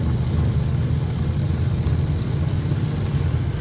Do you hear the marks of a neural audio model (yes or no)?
no